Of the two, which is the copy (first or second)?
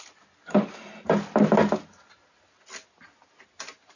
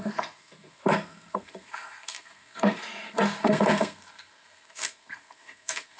second